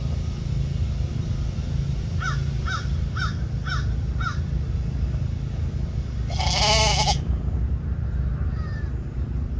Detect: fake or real real